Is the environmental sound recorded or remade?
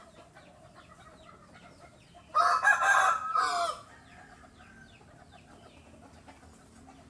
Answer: recorded